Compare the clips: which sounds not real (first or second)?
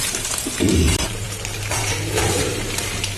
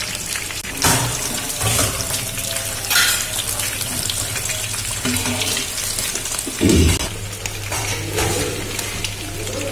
first